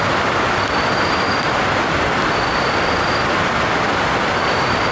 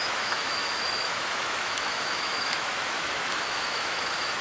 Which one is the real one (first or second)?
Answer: first